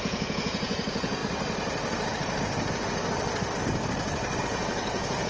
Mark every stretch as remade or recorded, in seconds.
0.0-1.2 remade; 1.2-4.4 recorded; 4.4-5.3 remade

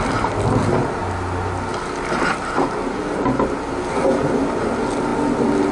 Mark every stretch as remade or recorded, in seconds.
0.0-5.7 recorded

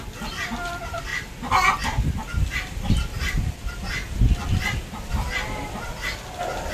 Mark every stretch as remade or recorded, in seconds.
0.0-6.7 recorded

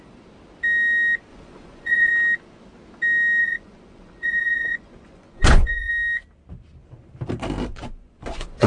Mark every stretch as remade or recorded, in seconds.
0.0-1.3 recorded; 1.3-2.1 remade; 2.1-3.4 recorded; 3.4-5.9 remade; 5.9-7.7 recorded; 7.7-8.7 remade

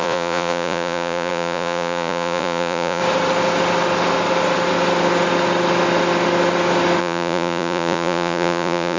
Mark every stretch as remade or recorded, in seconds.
0.0-3.0 remade; 3.0-7.0 recorded; 7.0-9.0 remade

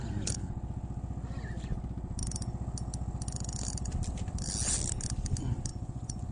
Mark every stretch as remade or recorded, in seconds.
0.0-5.7 recorded; 5.7-6.3 remade

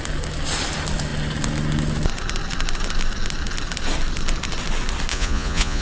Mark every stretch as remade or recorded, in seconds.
0.0-5.1 recorded; 5.1-5.8 remade